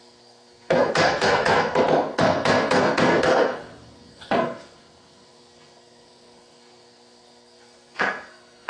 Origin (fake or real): fake